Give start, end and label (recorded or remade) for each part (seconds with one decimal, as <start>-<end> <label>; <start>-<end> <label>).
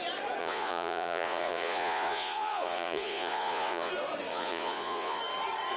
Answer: 0.0-0.4 recorded; 0.4-3.9 remade; 3.9-4.3 recorded; 4.3-5.2 remade; 5.2-5.8 recorded